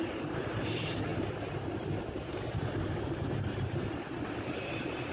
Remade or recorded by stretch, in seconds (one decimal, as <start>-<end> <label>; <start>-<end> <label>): 0.0-5.1 remade